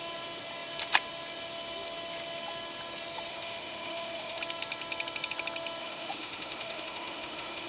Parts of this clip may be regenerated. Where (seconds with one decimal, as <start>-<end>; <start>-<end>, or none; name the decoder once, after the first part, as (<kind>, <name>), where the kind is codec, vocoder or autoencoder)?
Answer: 3.3-4.4 (autoencoder, DAC-VAE); 5.8-7.7